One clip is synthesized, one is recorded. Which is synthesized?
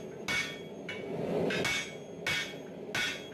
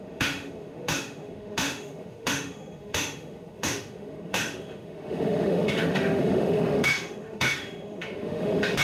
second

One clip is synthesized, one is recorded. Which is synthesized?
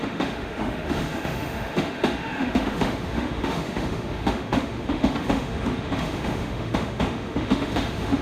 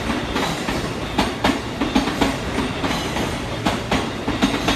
first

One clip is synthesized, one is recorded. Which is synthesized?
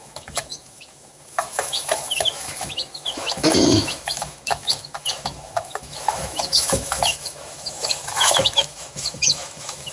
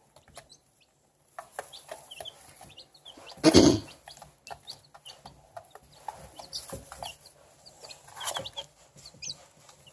first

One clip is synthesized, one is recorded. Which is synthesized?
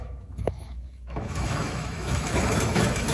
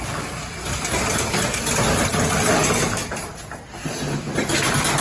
first